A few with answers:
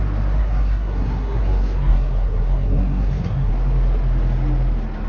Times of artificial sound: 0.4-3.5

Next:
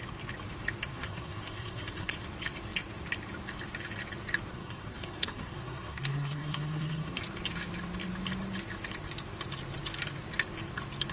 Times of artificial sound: 0.9-2.1; 4.5-7.2

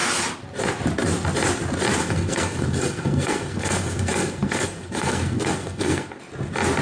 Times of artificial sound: 2.0-6.1